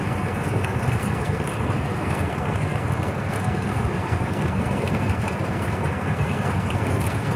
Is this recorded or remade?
remade